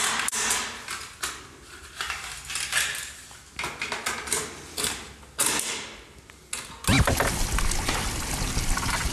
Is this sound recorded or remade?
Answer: recorded